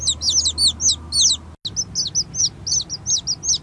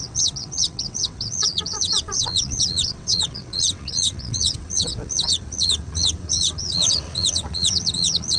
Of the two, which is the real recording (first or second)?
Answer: first